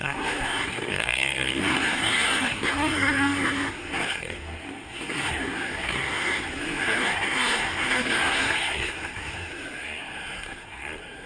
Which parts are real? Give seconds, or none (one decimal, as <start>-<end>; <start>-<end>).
none